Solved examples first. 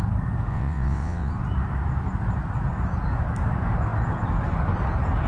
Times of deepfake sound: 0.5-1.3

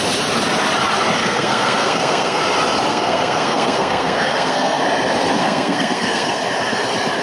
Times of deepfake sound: 1.2-2.4; 2.9-4.8; 5.4-6.4

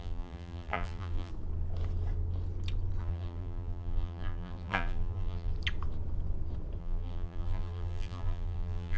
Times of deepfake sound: 0.0-1.3; 3.0-5.5; 6.8-9.0

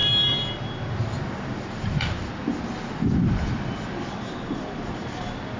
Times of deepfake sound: 1.2-5.6

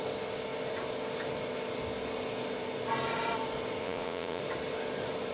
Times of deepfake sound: 3.8-4.4

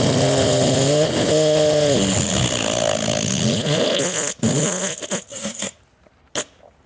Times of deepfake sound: 5.3-5.8